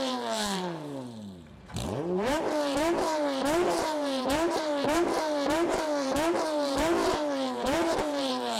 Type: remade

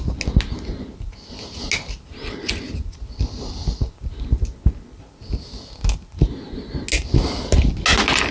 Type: recorded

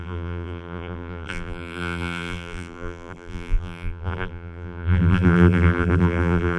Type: remade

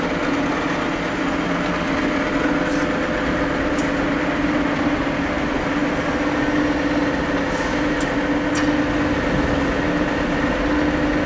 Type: recorded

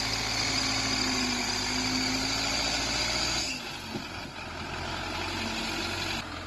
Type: recorded